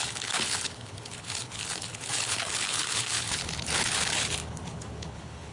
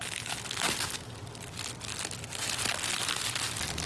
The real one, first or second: second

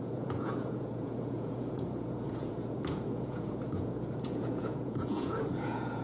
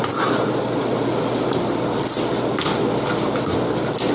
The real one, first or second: second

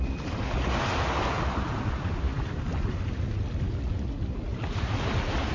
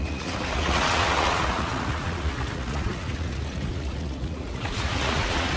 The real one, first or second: first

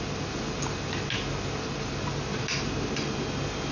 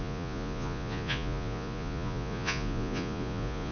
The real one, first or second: first